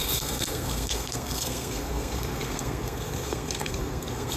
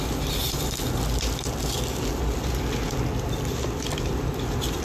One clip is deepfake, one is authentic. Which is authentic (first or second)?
second